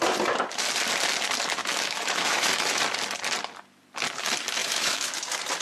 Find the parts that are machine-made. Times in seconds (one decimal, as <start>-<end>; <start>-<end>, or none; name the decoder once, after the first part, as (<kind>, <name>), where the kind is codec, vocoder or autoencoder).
1.6-2.8 (autoencoder, DAC-VAE); 4.6-5.1

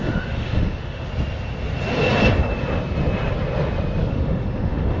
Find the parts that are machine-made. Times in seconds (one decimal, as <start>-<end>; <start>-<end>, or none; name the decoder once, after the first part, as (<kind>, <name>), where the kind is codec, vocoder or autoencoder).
0.0-1.1 (autoencoder, DAC-VAE); 4.1-5.0

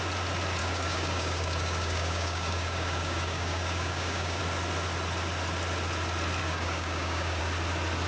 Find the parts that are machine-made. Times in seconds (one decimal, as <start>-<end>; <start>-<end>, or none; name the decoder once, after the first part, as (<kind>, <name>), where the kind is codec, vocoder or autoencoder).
0.6-4.4 (codec, DAC); 6.4-7.4

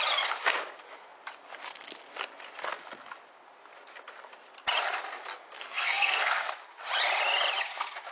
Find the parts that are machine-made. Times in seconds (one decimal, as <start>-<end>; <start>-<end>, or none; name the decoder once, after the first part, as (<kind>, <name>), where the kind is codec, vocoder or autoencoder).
5.6-6.5 (codec, SNAC)

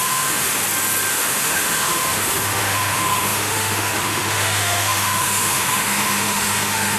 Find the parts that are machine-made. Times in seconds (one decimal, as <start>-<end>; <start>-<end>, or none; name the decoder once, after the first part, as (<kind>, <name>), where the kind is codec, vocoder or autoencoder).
0.0-0.6 (autoencoder, DAC-VAE); 1.1-7.0

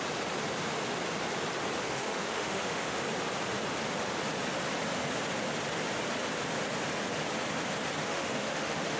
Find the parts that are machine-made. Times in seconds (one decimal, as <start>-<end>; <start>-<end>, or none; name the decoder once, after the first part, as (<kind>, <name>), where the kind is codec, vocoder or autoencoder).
1.8-3.0 (autoencoder, DAC-VAE); 8.0-9.0

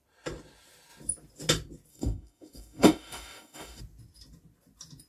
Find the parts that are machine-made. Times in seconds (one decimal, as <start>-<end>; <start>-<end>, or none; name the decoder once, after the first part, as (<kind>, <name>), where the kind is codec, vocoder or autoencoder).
1.9-3.8 (codec, DAC)